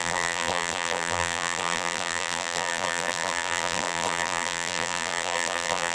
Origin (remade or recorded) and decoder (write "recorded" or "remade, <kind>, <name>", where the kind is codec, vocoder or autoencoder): remade, vocoder, BigVGAN v2